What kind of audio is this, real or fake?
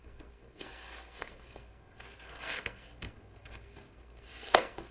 fake